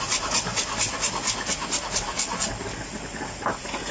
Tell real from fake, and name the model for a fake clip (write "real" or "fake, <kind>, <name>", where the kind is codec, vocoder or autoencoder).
real